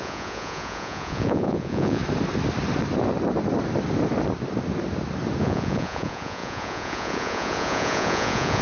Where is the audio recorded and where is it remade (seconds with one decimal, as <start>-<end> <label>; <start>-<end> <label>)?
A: 0.0-2.0 remade; 2.0-5.4 recorded; 5.4-8.6 remade